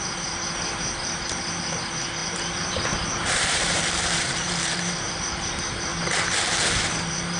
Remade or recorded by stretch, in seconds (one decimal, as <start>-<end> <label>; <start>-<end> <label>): 0.0-5.9 remade; 5.9-6.8 recorded; 6.8-7.4 remade